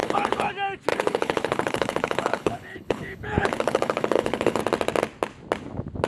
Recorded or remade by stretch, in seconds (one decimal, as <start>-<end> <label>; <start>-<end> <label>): 0.0-0.5 remade; 0.5-0.9 recorded; 0.9-4.6 remade; 4.6-6.1 recorded